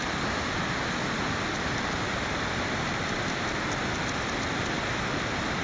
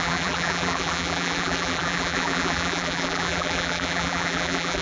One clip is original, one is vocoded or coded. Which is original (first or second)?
first